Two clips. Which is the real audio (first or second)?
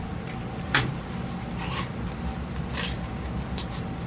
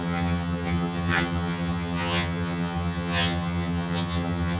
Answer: first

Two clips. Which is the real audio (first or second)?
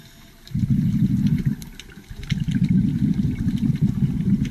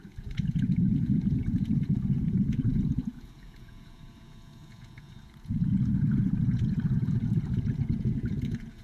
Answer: first